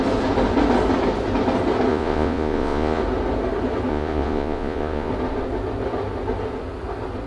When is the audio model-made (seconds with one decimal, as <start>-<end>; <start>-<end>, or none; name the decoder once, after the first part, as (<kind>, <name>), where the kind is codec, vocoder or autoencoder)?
1.9-3.0 (vocoder, Vocos); 3.9-5.1